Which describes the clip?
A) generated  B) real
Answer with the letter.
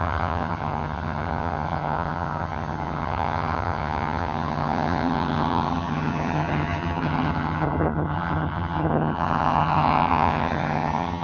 A